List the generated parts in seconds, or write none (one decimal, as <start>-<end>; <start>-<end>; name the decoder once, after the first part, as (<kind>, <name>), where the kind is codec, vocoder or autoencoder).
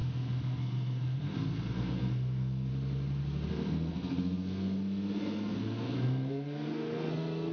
0.0-2.7 (codec, SNAC); 3.5-7.5